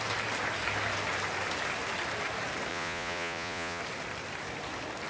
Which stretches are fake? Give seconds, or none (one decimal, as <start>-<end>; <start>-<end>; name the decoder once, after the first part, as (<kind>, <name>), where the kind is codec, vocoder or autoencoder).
2.7-3.8 (vocoder, Vocos)